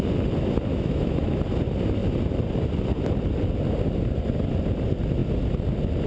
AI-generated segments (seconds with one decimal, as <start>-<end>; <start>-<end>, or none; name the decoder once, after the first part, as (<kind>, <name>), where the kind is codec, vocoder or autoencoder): 0.7-1.4 (autoencoder, DAC-VAE)